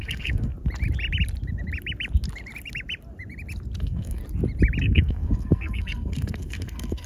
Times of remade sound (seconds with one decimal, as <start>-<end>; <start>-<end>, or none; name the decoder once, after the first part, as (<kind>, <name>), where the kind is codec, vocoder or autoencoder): 0.0-0.5 (codec, SNAC); 3.8-4.2; 4.8-7.1